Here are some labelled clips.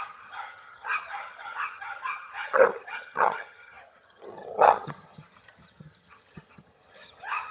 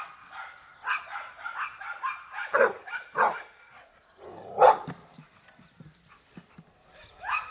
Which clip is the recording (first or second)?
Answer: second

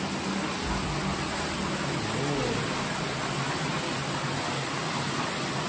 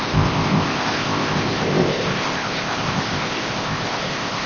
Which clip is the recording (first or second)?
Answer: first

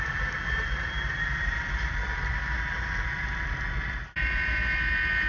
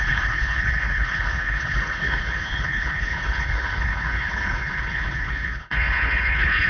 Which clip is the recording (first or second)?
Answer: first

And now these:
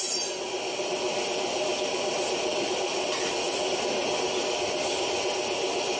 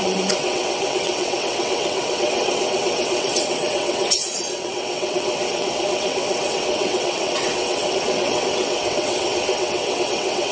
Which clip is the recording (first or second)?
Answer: first